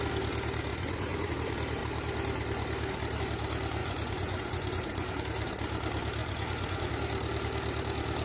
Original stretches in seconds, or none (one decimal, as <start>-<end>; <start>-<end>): 0.0-0.7; 1.3-3.8; 5.1-6.2; 6.9-8.2